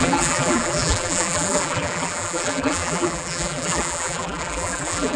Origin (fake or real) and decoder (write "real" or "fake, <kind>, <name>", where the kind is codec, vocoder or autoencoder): fake, vocoder, BigVGAN v2